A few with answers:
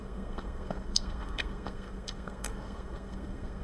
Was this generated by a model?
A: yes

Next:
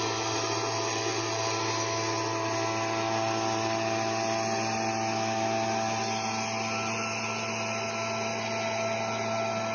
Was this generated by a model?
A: no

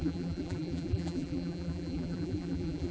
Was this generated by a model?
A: yes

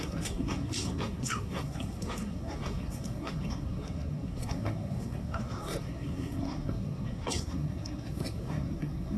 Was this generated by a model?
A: yes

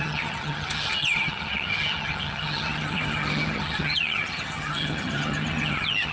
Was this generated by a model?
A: yes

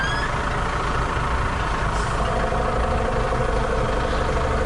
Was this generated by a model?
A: no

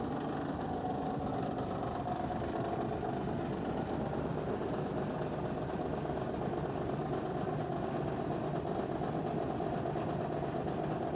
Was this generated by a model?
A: no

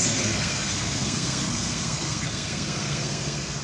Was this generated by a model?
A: yes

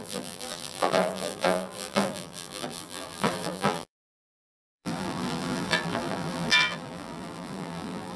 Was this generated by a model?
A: yes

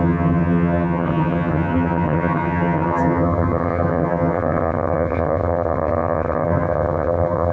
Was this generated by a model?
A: yes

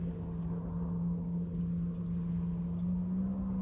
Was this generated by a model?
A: no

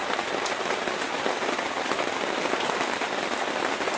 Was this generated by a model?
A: no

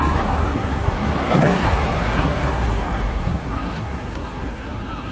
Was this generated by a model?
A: yes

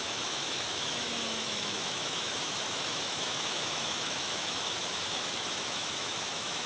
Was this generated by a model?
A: yes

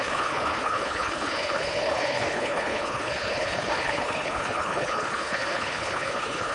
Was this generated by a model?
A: yes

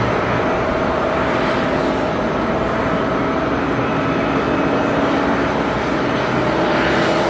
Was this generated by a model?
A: no